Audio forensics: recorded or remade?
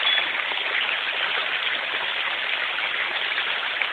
recorded